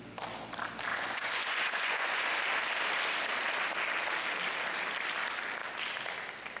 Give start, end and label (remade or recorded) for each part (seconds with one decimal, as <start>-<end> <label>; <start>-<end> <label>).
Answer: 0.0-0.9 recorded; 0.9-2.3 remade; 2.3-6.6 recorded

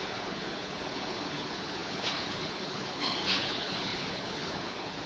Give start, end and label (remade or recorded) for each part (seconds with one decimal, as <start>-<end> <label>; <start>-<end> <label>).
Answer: 0.0-5.1 remade

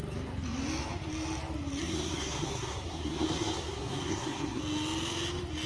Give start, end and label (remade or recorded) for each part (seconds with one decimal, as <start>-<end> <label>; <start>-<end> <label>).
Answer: 0.0-1.8 recorded; 1.8-4.6 remade; 4.6-5.7 recorded

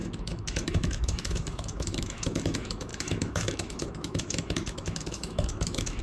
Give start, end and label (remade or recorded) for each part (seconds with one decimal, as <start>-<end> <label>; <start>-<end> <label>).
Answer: 0.0-6.0 remade

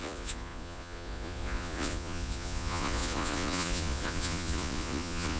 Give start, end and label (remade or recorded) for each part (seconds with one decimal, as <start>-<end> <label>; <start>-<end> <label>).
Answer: 0.0-5.4 remade